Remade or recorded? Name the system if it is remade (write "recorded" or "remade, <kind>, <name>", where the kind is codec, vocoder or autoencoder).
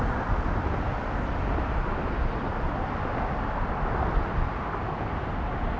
recorded